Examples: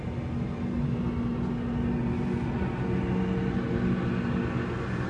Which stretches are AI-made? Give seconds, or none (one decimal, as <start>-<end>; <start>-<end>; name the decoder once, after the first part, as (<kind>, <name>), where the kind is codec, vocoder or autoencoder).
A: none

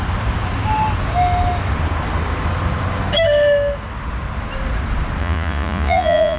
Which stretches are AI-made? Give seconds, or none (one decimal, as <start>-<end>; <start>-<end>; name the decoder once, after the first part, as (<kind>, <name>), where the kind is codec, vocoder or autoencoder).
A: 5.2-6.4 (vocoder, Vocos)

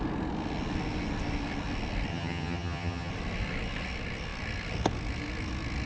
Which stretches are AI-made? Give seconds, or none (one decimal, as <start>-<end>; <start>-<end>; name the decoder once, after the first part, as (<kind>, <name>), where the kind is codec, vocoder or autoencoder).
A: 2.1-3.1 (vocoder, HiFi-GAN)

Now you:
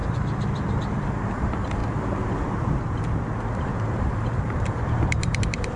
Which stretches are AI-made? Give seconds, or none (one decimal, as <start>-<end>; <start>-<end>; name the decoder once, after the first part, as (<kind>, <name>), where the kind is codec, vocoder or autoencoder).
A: 0.7-1.8 (vocoder, BigVGAN v2); 3.6-5.8

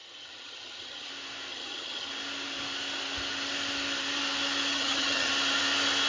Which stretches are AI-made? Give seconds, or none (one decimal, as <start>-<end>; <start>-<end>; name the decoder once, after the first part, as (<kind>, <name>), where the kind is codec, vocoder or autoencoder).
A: 0.0-1.1 (vocoder, HiFi-GAN); 1.5-2.1; 4.7-5.3

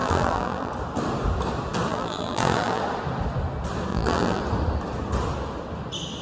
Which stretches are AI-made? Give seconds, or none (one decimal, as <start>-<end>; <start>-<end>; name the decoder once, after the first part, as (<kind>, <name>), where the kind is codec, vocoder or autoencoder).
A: 0.0-0.7 (vocoder, BigVGAN v2); 1.9-2.8; 3.9-4.4

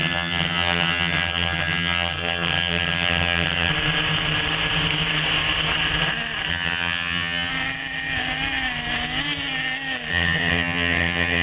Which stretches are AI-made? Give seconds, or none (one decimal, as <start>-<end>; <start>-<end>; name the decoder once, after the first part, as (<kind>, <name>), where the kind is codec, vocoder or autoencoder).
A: 0.0-3.7 (vocoder, HiFi-GAN); 6.5-7.5; 10.1-11.4